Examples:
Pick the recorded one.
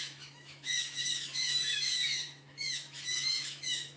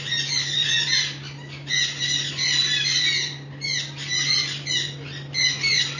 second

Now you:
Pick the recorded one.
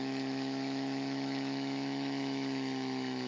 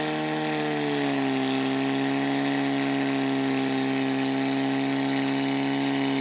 second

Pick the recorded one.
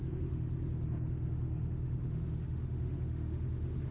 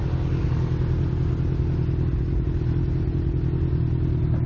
second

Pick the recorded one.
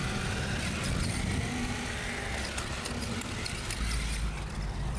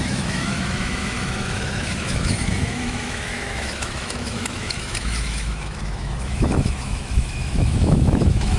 first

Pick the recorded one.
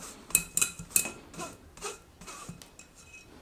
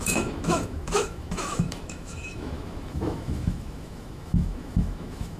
first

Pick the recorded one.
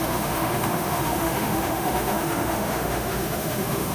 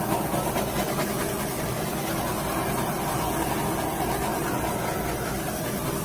second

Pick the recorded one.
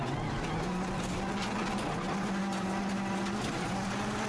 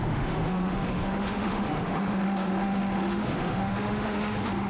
first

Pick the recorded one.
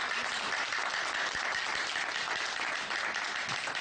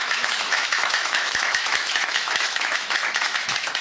first